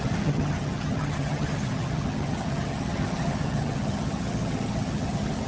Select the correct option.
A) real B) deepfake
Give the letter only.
B